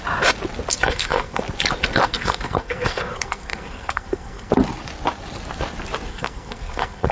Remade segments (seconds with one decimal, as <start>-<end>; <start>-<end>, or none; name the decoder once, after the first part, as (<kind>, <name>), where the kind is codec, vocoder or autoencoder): 0.7-1.4 (codec, SNAC); 2.0-4.5; 6.1-7.1